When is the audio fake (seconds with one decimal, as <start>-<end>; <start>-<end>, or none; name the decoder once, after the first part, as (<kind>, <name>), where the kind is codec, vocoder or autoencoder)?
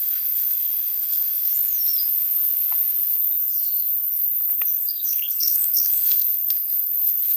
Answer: 0.0-1.5 (codec, SNAC); 4.5-7.4